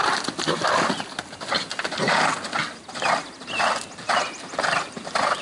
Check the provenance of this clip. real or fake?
real